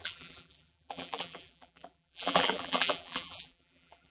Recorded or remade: remade